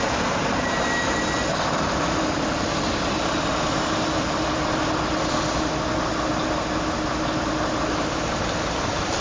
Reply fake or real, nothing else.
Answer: real